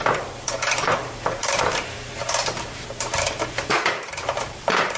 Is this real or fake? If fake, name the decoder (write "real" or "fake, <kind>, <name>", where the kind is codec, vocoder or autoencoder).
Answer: fake, vocoder, BigVGAN v2